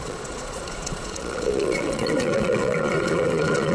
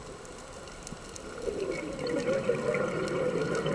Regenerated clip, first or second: first